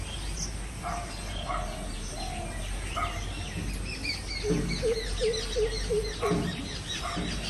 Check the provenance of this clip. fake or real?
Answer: real